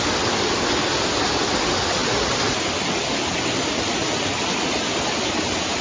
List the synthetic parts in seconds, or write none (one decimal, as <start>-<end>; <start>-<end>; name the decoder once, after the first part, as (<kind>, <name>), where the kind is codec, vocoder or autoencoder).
2.0-4.7 (vocoder, BigVGAN v2)